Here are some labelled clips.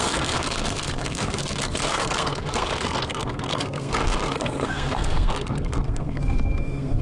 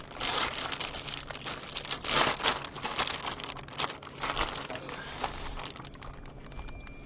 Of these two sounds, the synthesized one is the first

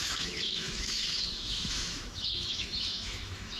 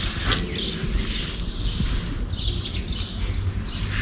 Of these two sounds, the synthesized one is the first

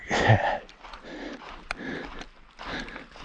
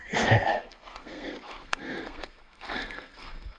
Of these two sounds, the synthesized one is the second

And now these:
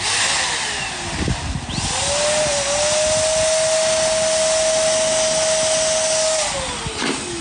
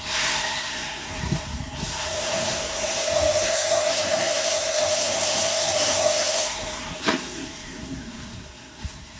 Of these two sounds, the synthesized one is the second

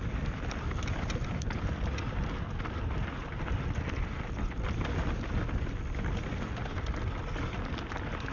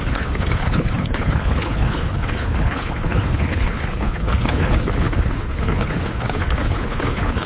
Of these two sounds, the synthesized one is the second